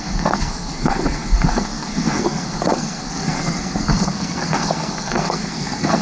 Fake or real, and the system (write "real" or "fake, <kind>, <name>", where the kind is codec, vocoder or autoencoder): fake, codec, SNAC